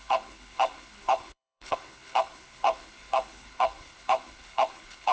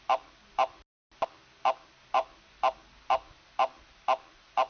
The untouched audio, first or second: second